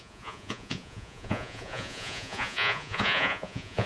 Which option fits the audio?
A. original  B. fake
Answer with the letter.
B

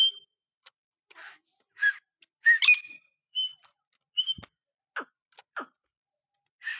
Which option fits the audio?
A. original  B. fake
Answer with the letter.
A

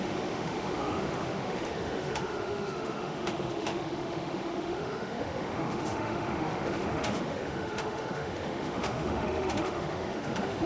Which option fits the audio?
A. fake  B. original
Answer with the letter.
A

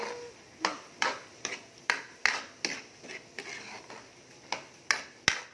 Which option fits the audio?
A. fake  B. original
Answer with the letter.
B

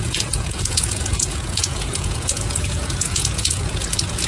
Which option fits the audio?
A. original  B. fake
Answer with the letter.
B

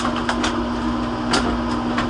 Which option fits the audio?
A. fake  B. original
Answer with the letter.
B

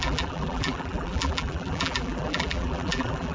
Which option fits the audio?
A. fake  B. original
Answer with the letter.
A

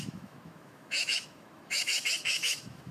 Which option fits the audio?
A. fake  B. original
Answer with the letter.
A